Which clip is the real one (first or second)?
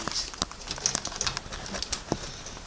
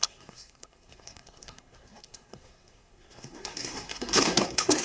first